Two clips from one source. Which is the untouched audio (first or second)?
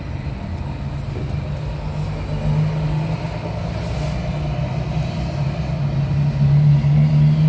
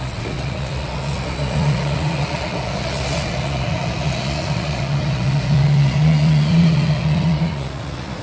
first